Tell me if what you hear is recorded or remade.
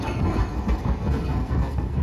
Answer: remade